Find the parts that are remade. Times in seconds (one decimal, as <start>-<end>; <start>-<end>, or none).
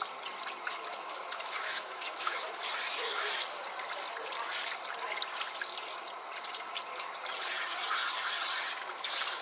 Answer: 0.9-2.5